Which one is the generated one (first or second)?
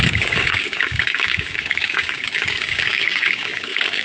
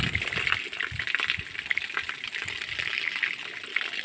first